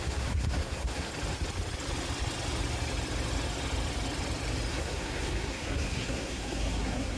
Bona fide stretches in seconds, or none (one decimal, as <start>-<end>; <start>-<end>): 1.1-4.7